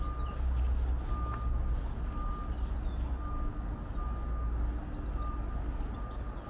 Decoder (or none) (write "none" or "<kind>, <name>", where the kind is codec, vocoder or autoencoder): none